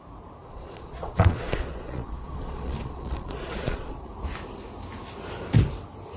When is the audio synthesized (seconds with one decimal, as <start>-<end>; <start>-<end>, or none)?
0.4-4.1